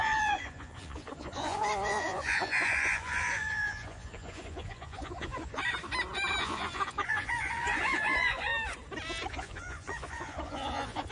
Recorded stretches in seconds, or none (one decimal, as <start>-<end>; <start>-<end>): 5.6-6.4; 8.5-9.3